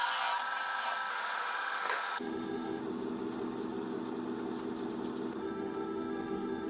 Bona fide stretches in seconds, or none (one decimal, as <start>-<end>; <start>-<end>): 0.0-1.1; 2.8-5.4